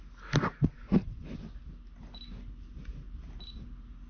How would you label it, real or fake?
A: real